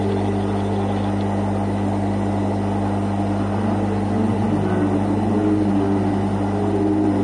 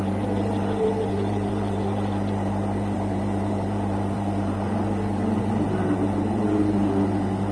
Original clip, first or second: first